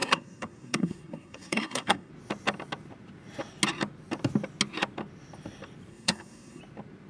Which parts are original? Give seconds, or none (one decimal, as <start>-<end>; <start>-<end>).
2.1-5.9; 6.6-7.1